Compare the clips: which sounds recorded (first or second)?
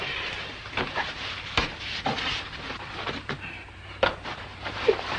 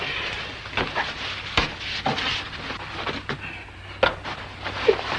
second